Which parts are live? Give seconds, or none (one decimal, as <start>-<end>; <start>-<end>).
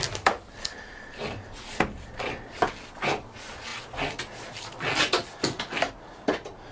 0.0-6.7